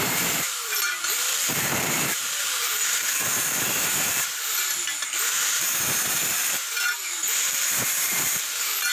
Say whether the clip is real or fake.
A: fake